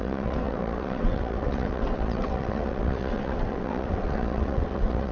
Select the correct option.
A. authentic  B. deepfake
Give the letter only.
B